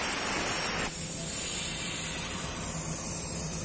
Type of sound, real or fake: real